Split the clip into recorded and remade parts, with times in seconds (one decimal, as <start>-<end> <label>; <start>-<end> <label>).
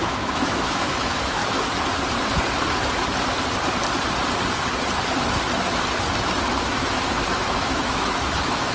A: 0.0-1.4 remade; 1.4-6.6 recorded; 6.6-8.7 remade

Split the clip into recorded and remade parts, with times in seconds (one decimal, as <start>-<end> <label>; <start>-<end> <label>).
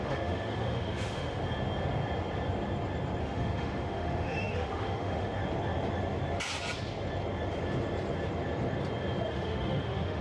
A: 0.0-1.4 remade; 1.4-3.2 recorded; 3.2-5.4 remade; 5.4-9.3 recorded; 9.3-10.2 remade